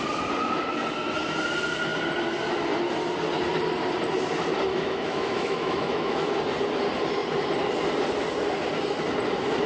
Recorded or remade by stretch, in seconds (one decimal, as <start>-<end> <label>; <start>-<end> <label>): 0.0-4.7 recorded; 4.7-6.3 remade; 6.3-9.7 recorded